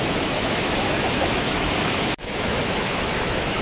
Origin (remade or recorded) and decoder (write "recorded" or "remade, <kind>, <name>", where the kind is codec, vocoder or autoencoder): remade, autoencoder, DAC-VAE